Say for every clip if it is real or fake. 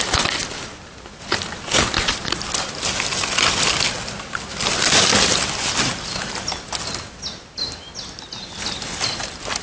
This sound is real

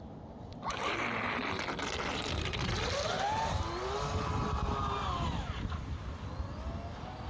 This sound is real